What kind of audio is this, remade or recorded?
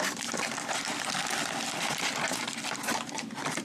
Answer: recorded